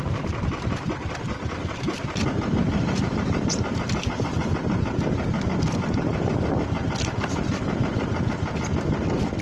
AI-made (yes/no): yes